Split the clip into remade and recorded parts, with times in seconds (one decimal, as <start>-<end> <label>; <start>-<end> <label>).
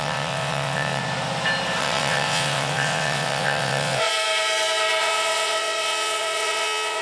0.0-1.0 remade; 1.0-1.8 recorded; 1.8-4.1 remade; 4.1-5.0 recorded; 5.0-7.0 remade